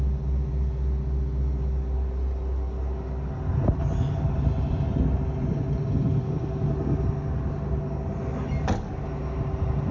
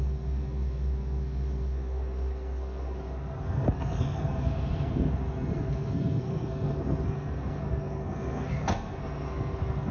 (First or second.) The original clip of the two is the first